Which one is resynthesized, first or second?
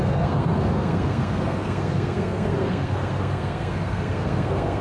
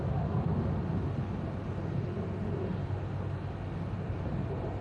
first